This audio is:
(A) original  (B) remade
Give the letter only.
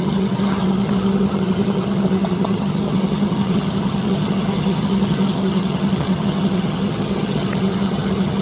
B